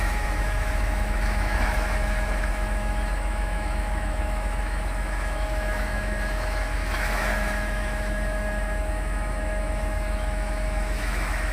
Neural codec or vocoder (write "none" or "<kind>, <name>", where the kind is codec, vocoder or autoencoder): autoencoder, DAC-VAE